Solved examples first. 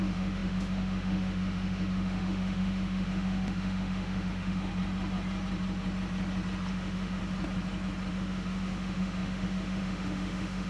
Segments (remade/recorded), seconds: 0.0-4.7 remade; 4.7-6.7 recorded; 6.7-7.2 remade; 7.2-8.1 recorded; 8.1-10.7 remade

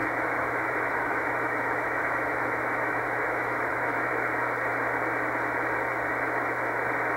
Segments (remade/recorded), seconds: 0.0-4.1 remade; 4.1-7.2 recorded

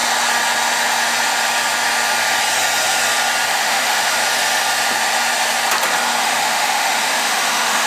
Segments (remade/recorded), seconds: 0.0-3.5 recorded; 3.5-4.2 remade; 4.2-6.2 recorded; 6.2-7.9 remade

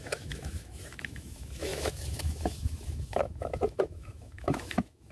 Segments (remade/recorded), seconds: 0.0-5.1 remade

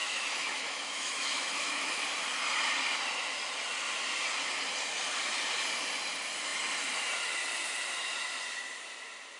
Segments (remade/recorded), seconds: 0.0-2.0 remade; 2.0-9.4 recorded

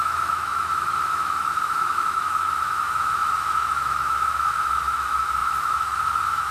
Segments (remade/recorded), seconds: 0.0-6.5 remade